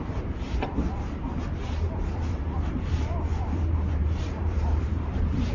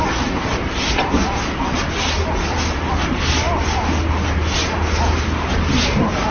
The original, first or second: second